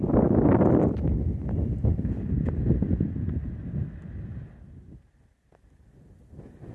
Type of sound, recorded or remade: recorded